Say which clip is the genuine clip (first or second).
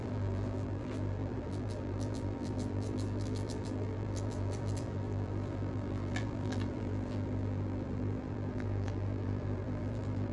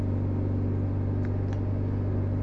second